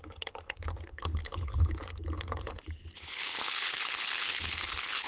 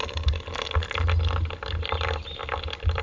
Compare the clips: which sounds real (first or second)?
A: second